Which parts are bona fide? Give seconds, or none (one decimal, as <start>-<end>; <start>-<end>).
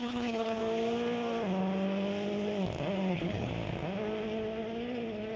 0.6-3.1; 3.5-5.4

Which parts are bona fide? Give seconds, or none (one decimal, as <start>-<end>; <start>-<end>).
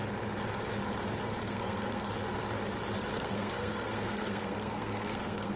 0.0-1.4; 2.1-3.1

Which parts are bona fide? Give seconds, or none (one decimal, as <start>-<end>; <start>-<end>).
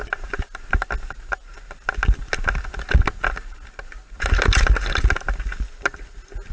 0.0-6.5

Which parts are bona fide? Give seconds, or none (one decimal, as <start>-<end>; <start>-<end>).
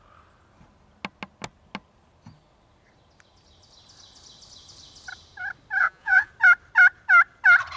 0.0-5.8; 6.3-7.8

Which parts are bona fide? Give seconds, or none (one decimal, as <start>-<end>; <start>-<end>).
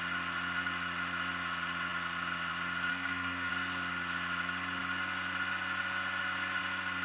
0.0-2.9; 3.5-7.0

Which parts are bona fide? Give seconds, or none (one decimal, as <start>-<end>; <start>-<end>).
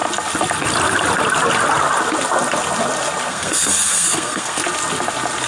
0.0-3.3; 4.6-5.5